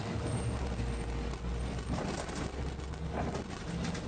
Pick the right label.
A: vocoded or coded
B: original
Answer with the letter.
B